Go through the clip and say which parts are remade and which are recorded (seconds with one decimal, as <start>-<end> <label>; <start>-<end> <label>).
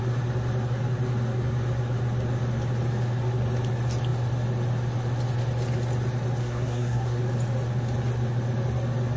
0.0-6.4 recorded; 6.4-7.2 remade; 7.2-9.2 recorded